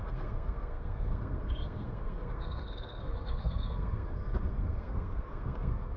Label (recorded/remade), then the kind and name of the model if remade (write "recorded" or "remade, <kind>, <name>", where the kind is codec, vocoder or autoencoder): remade, codec, SNAC